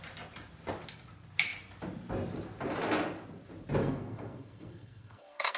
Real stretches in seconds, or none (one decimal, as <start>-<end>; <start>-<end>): 0.0-3.8